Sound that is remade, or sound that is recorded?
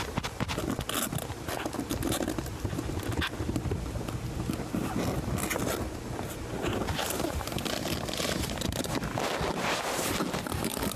recorded